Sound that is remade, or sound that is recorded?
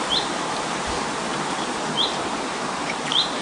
remade